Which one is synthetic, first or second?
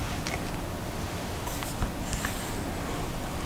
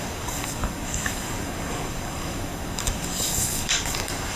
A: second